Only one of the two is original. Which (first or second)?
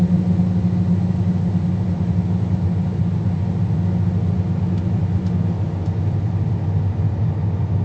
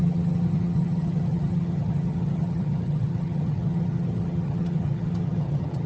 first